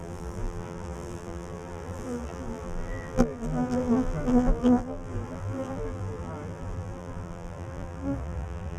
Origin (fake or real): fake